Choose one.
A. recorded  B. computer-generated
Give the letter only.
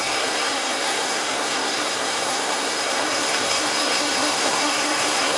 B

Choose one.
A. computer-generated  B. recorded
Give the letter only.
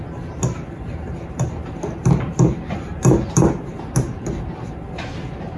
B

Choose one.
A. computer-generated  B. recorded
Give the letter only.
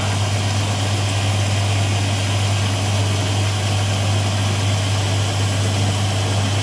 B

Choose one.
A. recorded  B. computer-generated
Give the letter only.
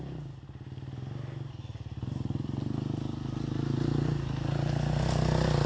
A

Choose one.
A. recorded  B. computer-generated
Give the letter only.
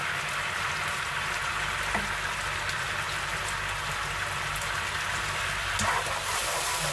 A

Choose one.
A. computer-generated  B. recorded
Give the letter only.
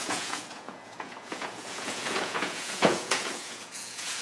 A